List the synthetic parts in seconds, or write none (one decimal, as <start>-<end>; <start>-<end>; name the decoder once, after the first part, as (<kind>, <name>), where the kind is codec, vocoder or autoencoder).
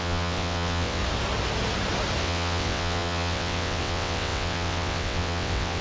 0.0-1.0 (vocoder, WaveNeXt); 2.2-5.8